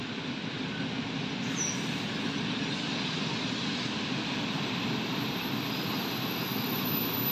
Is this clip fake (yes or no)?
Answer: no